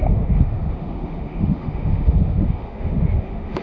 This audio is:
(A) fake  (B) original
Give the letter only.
A